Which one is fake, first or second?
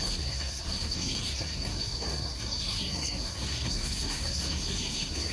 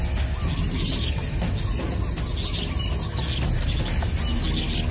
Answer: first